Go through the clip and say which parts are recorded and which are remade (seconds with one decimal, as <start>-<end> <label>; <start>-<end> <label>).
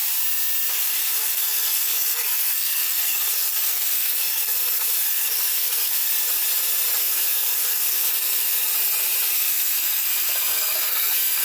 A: 0.0-0.7 recorded; 0.7-6.1 remade; 6.1-7.0 recorded; 7.0-8.7 remade; 8.7-9.3 recorded; 9.3-11.4 remade